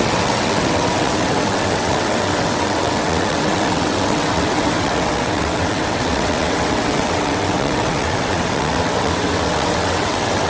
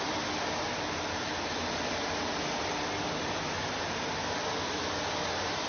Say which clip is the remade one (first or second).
first